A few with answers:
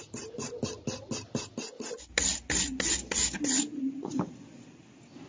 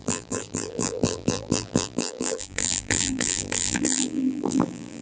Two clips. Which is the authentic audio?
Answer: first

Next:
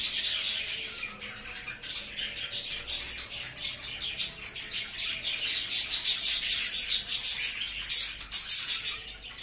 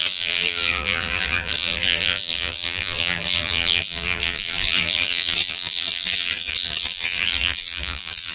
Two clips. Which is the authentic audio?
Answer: first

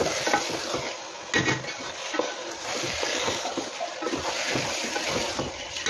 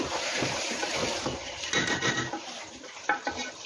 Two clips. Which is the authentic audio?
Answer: first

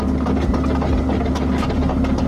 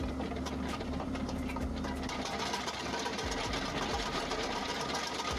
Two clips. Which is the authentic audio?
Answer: first